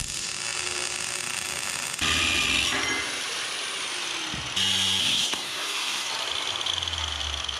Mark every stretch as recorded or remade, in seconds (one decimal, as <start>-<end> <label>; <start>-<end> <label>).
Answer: 0.0-5.0 recorded; 5.0-6.1 remade; 6.1-7.6 recorded